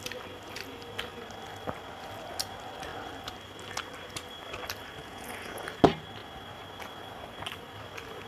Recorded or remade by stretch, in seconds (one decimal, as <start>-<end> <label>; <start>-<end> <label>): 0.0-5.0 recorded; 5.0-5.6 remade; 5.6-8.3 recorded